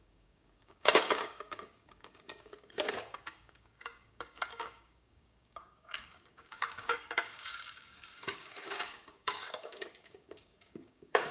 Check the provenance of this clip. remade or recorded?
remade